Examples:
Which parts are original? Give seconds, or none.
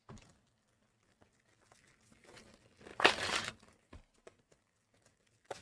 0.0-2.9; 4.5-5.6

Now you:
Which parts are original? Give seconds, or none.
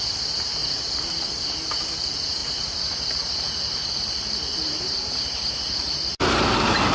0.0-0.6; 1.1-2.4; 6.5-6.9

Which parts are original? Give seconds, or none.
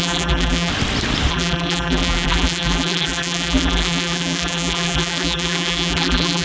0.7-1.3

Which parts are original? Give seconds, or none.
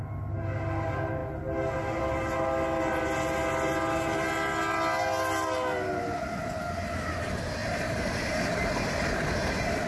0.0-7.6; 9.3-9.9